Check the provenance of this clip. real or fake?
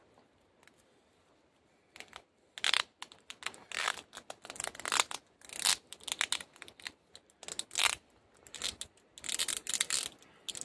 real